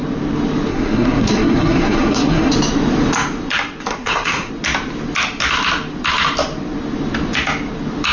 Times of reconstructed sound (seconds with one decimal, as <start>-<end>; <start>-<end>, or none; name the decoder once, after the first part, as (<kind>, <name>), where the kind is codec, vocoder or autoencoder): 0.7-2.5 (codec, SNAC); 3.9-4.5